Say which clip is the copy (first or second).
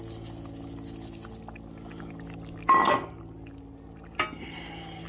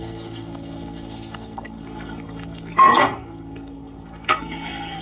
second